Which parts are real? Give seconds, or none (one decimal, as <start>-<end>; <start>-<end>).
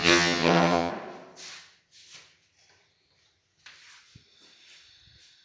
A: 0.9-5.4